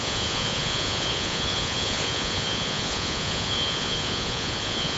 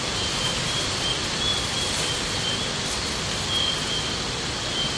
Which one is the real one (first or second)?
second